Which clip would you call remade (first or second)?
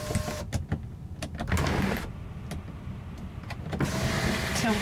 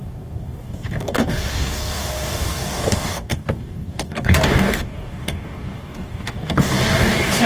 second